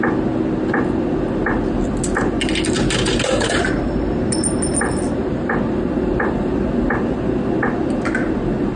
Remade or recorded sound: recorded